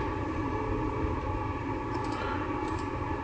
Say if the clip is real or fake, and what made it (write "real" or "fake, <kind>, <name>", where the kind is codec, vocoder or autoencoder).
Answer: real